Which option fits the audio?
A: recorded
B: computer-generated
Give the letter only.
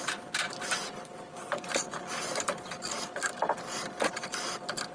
A